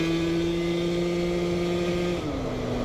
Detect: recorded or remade recorded